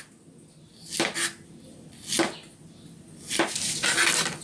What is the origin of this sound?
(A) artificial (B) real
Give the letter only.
B